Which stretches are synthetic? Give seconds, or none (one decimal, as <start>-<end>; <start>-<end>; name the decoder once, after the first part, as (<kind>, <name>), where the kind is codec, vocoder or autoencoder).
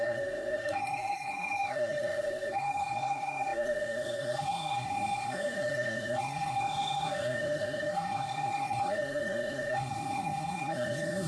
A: 0.0-11.3 (codec, SNAC)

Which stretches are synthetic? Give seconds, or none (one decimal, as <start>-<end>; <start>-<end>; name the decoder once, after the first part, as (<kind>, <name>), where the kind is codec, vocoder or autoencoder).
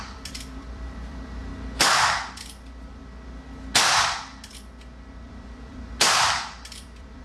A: 0.0-1.5 (vocoder, BigVGAN v2); 2.4-3.0; 5.3-7.2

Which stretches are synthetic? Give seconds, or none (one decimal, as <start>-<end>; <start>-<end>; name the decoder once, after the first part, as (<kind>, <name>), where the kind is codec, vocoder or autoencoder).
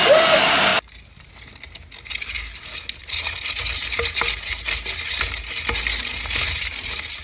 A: none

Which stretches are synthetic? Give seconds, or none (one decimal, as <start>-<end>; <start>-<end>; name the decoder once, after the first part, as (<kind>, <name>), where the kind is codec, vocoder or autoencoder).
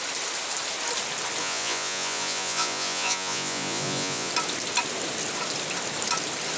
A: 1.4-4.3 (vocoder, Vocos)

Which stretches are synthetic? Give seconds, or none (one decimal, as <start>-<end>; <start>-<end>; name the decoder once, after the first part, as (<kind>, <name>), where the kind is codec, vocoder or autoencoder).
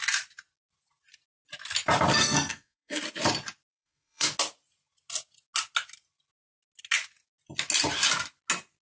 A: 2.1-3.0 (codec, SNAC); 3.7-4.3